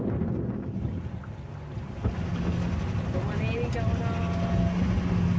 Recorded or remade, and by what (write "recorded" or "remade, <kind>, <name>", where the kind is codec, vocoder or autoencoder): recorded